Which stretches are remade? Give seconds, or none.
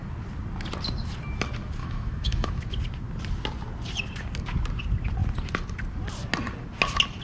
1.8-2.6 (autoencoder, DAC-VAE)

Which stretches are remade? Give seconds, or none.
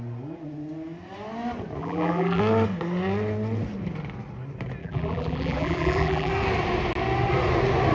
1.8-2.4 (vocoder, BigVGAN v2); 4.8-6.3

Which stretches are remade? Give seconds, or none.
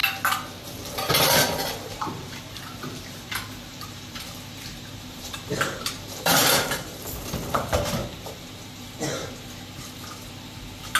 2.2-7.2 (vocoder, BigVGAN v2); 8.0-9.3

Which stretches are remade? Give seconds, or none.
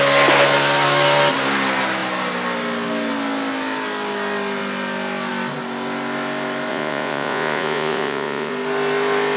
6.7-8.5 (vocoder, Vocos)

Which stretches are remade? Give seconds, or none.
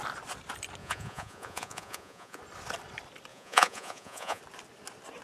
0.8-2.4 (vocoder, Vocos); 3.3-4.4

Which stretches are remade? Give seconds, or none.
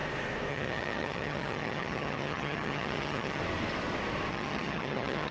0.5-3.4 (vocoder, HiFi-GAN); 4.3-5.3